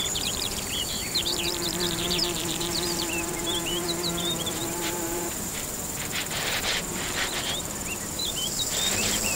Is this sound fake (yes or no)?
yes